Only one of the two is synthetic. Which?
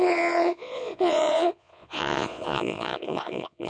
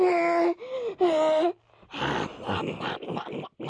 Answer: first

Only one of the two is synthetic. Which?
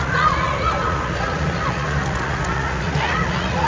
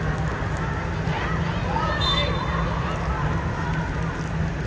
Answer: first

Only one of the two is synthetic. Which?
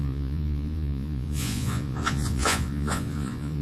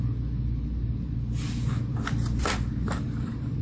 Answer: first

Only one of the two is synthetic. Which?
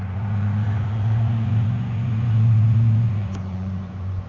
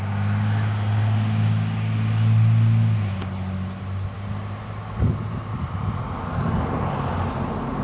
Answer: first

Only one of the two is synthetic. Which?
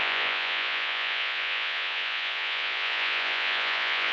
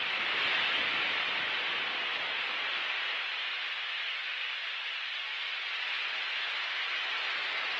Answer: first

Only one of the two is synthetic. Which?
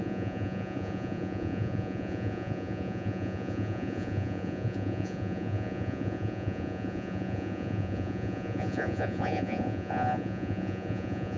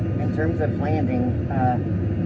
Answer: first